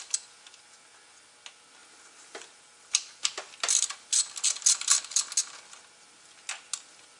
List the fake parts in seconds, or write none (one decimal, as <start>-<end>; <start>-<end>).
1.8-5.3